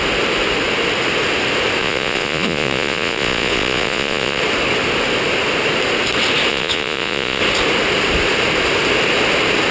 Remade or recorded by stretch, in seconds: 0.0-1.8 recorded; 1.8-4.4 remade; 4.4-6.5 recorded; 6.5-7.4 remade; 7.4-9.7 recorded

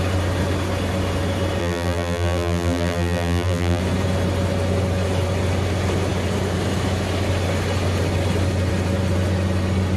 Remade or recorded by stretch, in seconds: 0.0-1.6 recorded; 1.6-3.8 remade; 3.8-10.0 recorded

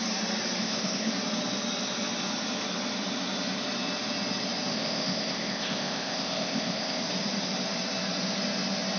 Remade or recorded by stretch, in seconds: 0.0-0.6 recorded; 0.6-1.1 remade; 1.1-4.7 recorded; 4.7-7.0 remade; 7.0-9.0 recorded

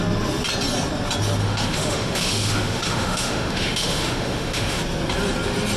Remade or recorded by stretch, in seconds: 0.0-1.4 recorded; 1.4-4.8 remade; 4.8-5.8 recorded

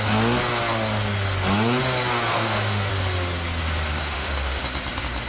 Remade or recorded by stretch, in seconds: 0.0-2.3 recorded; 2.3-2.9 remade; 2.9-4.0 recorded; 4.0-4.6 remade; 4.6-5.3 recorded